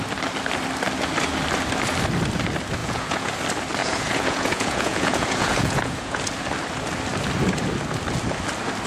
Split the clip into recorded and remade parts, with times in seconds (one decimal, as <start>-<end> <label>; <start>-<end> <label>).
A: 0.0-2.8 recorded; 2.8-3.3 remade; 3.3-3.8 recorded; 3.8-6.2 remade; 6.2-8.9 recorded